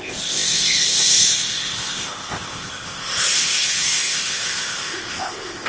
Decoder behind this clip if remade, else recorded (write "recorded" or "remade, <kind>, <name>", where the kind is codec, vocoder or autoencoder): remade, codec, ZipCodec